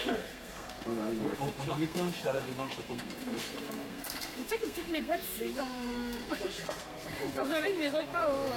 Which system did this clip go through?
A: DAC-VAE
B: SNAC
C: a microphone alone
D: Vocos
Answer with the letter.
B